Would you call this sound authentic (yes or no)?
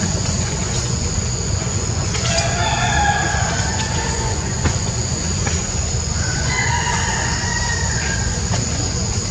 no